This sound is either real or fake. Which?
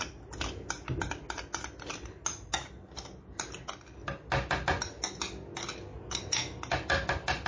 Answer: real